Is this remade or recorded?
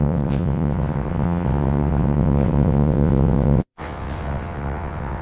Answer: remade